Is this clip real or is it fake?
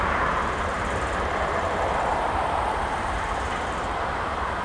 fake